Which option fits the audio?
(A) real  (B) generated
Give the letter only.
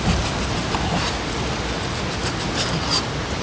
A